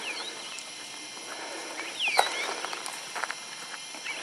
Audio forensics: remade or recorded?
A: remade